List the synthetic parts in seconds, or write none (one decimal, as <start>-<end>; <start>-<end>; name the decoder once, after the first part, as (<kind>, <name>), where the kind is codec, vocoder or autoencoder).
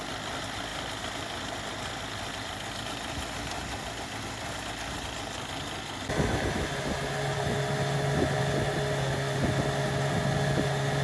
none